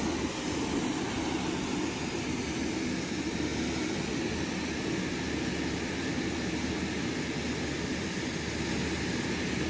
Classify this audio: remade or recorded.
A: recorded